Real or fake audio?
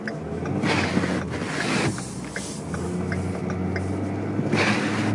real